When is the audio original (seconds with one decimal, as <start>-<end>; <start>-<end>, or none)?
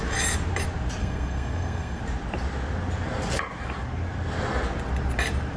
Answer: 0.0-1.0; 2.0-5.6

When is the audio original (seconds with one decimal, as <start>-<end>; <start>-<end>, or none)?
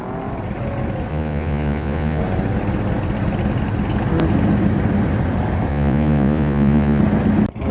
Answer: 0.0-1.1; 2.2-5.7; 7.0-7.7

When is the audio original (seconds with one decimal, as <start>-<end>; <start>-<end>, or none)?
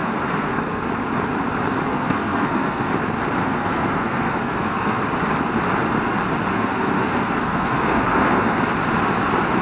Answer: 0.8-1.9; 2.9-3.4; 5.0-6.5; 8.6-9.6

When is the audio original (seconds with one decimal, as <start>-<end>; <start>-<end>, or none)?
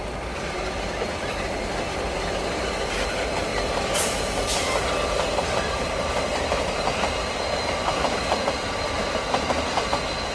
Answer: 3.5-6.4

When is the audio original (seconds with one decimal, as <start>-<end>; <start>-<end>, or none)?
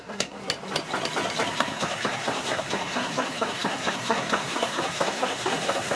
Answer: 0.4-1.5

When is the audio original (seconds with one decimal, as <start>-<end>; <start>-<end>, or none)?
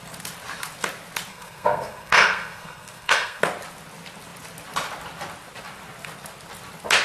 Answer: 0.0-1.3; 3.4-7.0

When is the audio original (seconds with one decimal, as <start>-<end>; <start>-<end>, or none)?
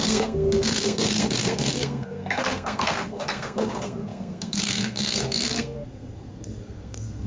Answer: none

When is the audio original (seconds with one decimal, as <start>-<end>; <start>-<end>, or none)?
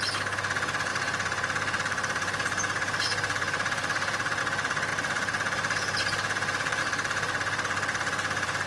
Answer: 0.0-0.9; 4.4-4.9; 6.8-8.7